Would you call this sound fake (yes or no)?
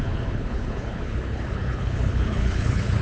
yes